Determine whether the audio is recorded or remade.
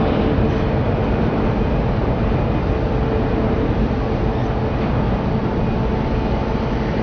recorded